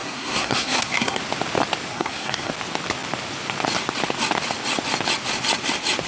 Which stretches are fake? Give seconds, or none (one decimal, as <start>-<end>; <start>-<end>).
0.0-1.2; 1.9-2.5